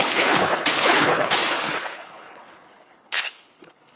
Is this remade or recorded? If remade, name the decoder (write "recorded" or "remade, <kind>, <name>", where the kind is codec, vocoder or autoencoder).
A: remade, codec, HILCodec